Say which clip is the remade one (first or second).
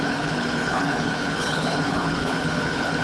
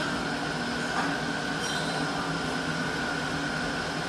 first